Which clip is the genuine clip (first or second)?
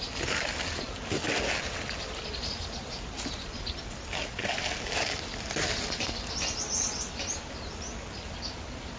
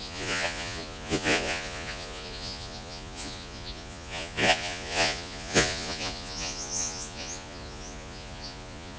first